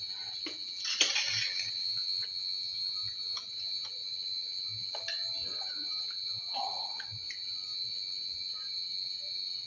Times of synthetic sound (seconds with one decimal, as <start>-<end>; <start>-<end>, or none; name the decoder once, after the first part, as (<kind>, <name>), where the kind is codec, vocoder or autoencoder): none